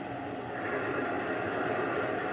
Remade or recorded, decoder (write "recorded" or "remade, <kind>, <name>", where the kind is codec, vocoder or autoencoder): recorded